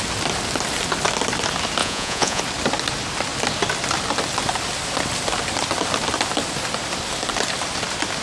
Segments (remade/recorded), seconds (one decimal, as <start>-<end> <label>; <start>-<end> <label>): 0.0-1.8 recorded; 1.8-2.4 remade; 2.4-8.2 recorded